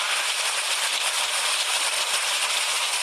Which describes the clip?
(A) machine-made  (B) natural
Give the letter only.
B